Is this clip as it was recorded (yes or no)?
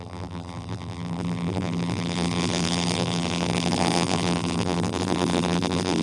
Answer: no